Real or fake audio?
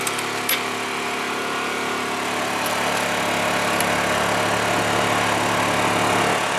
real